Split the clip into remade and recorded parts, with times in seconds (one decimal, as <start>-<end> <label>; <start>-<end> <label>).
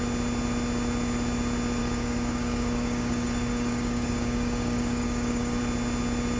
0.0-1.8 recorded; 1.8-5.6 remade; 5.6-6.4 recorded